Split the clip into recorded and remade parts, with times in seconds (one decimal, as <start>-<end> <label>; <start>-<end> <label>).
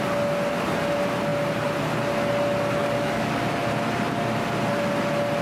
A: 0.0-2.8 recorded; 2.8-3.4 remade; 3.4-5.4 recorded